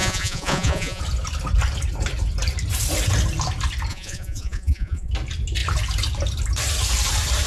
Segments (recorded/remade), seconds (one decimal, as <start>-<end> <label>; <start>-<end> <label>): 0.0-1.0 remade; 1.0-3.9 recorded; 3.9-5.1 remade; 5.1-7.5 recorded